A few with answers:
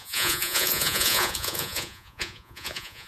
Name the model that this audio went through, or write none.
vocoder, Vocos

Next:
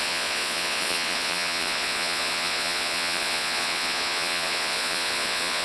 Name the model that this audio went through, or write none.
vocoder, Vocos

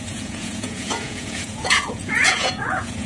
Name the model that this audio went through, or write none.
vocoder, Vocos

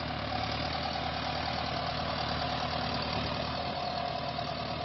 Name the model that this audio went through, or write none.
none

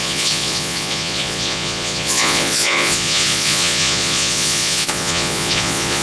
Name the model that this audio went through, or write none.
vocoder, Vocos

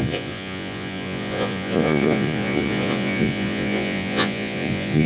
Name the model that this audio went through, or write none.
vocoder, Vocos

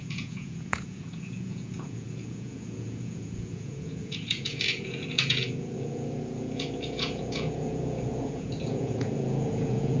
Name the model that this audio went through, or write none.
vocoder, Vocos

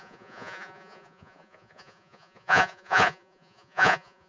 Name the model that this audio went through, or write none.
vocoder, Vocos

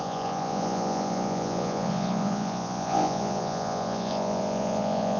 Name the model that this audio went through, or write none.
vocoder, Vocos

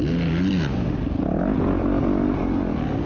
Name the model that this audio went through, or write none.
none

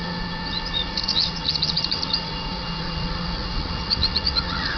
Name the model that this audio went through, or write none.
vocoder, Vocos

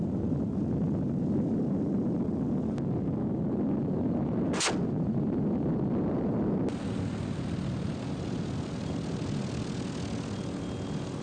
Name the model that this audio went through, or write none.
none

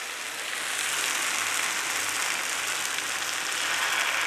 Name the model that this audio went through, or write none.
none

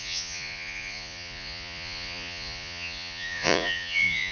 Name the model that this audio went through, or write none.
vocoder, Vocos